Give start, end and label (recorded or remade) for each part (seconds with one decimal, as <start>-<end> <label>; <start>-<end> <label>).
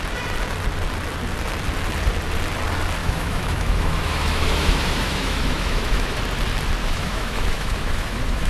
0.0-3.0 recorded; 3.0-6.2 remade; 6.2-6.8 recorded; 6.8-8.5 remade